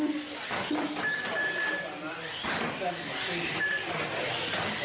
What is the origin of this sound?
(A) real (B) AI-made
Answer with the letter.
A